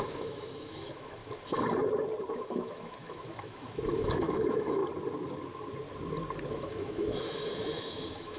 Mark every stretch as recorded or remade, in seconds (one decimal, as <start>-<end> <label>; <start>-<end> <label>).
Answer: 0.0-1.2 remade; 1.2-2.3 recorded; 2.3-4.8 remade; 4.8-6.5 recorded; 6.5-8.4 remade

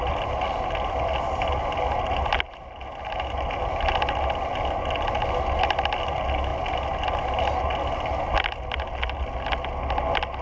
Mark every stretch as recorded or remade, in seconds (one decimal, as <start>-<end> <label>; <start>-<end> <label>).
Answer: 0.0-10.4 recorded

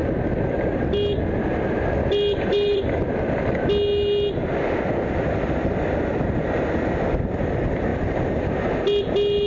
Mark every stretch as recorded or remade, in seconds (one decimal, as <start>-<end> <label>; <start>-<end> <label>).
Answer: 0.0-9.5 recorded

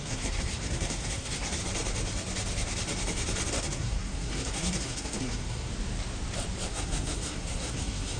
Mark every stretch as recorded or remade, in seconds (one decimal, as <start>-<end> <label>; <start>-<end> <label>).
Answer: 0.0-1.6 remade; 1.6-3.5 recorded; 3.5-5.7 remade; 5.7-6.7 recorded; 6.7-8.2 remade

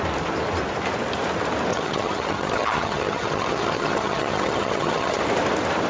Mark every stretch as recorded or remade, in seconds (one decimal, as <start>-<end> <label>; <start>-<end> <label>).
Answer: 0.0-1.7 recorded; 1.7-5.2 remade; 5.2-5.9 recorded

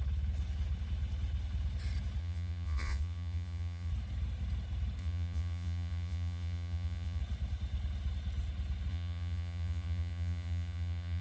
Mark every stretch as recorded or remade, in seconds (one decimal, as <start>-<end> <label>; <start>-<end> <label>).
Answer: 0.0-2.2 recorded; 2.2-3.9 remade; 3.9-5.0 recorded; 5.0-7.2 remade; 7.2-8.9 recorded; 8.9-11.2 remade

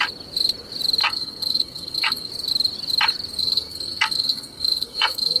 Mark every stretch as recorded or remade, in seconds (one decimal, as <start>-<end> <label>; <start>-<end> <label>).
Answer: 0.0-1.0 recorded; 1.0-2.3 remade; 2.3-3.4 recorded; 3.4-5.4 remade

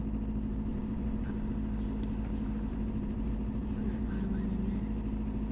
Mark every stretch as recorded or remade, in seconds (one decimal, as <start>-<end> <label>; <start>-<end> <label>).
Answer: 0.0-0.7 recorded; 0.7-1.5 remade; 1.5-2.7 recorded; 2.7-4.1 remade; 4.1-5.5 recorded